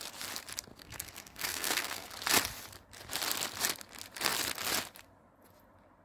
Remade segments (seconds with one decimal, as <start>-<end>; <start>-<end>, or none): 0.7-2.1